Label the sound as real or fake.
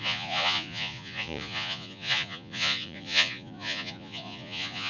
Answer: fake